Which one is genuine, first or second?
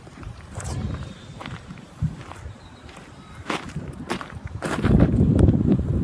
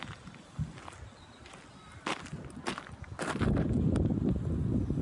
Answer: second